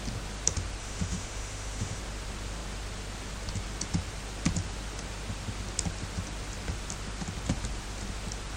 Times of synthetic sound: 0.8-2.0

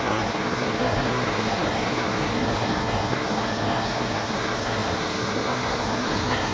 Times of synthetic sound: 0.0-6.5

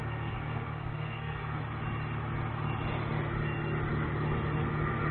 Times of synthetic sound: 0.0-1.6

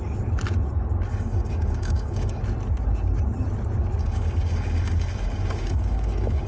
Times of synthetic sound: 1.1-2.4; 4.0-6.5

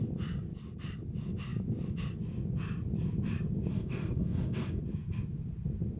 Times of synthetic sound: 3.7-4.8

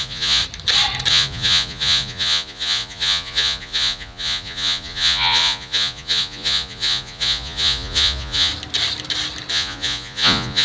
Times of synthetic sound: 0.0-0.4; 1.1-8.5; 9.5-10.6